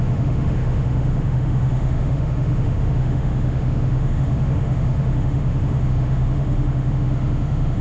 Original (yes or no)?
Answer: no